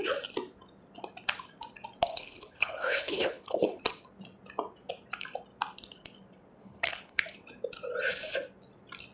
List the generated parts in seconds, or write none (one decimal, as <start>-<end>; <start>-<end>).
2.1-3.8; 6.6-7.2